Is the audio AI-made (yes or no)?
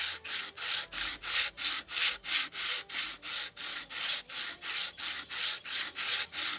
no